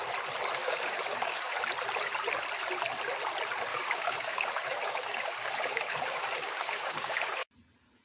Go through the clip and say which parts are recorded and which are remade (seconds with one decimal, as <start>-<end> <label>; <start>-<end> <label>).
0.0-0.6 recorded; 0.6-1.6 remade; 1.6-3.7 recorded; 3.7-7.5 remade; 7.5-8.0 recorded